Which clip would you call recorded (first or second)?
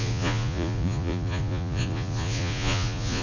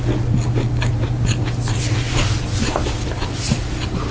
second